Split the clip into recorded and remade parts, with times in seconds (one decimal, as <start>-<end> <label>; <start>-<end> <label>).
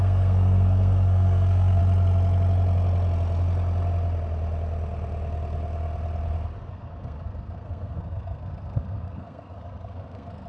0.0-1.8 remade; 1.8-6.7 recorded; 6.7-10.5 remade